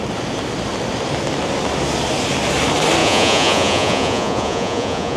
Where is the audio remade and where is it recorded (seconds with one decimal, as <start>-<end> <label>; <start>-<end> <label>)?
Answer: 0.0-3.0 recorded; 3.0-5.2 remade